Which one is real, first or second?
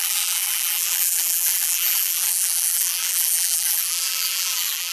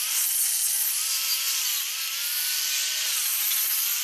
second